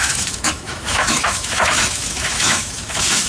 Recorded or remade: remade